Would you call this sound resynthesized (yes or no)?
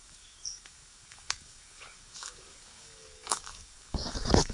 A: yes